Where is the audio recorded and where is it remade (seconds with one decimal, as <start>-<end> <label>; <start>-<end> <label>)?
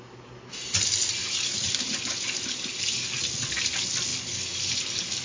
0.0-1.2 recorded; 1.2-2.1 remade; 2.1-5.2 recorded